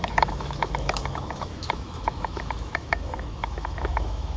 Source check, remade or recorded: remade